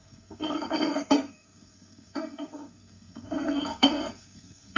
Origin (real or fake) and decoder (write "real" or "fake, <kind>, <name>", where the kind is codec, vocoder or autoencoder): fake, codec, SNAC